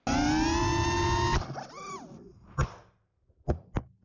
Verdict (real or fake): real